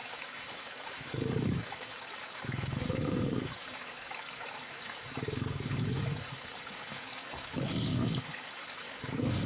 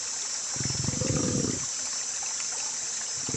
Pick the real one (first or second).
second